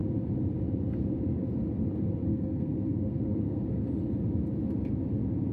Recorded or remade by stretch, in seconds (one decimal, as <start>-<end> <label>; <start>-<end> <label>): 0.0-2.3 recorded; 2.3-3.6 remade; 3.6-5.5 recorded